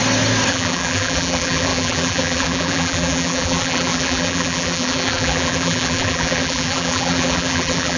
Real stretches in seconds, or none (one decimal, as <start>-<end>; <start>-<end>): 0.0-0.5